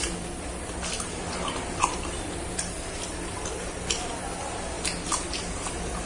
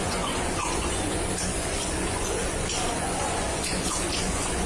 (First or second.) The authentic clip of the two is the first